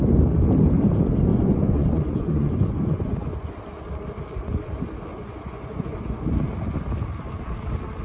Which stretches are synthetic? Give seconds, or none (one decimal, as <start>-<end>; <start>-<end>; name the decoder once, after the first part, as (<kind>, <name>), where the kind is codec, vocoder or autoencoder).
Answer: 1.3-3.5 (vocoder, Vocos); 5.1-6.2